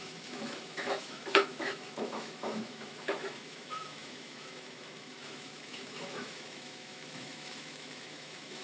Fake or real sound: fake